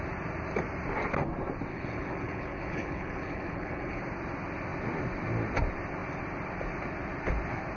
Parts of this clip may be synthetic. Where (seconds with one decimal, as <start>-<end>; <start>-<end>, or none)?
1.7-4.0